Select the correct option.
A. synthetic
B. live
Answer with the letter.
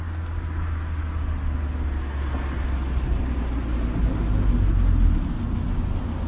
B